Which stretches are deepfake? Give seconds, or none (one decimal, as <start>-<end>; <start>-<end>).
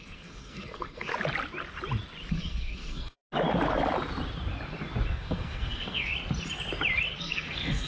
0.0-1.1; 2.3-3.2; 5.1-6.1; 7.2-7.9